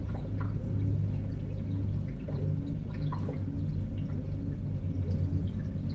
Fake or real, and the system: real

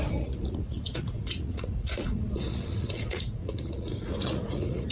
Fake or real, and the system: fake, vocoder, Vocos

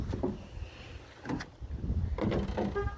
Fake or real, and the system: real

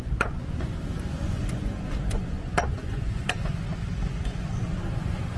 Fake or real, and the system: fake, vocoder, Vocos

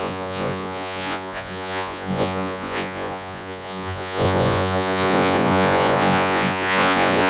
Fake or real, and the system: fake, vocoder, Vocos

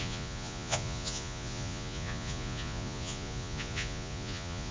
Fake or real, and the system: fake, vocoder, Vocos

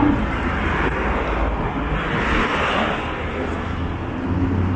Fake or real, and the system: real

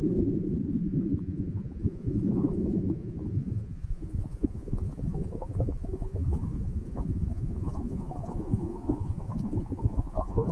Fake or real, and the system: fake, vocoder, Vocos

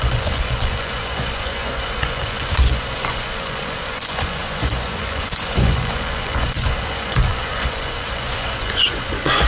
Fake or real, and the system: fake, vocoder, Vocos